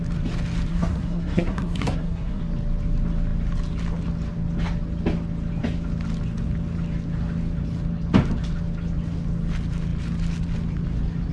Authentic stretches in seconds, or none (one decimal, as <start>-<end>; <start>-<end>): 0.0-0.7; 2.4-11.3